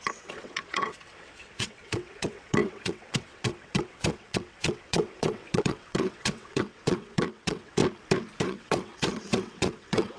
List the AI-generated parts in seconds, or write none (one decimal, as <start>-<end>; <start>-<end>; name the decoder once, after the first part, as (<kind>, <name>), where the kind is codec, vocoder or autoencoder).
0.0-7.8 (vocoder, WaveNeXt); 8.4-10.2